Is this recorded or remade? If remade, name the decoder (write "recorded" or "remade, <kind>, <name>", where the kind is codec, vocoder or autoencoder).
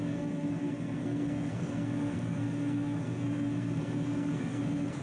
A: remade, codec, SNAC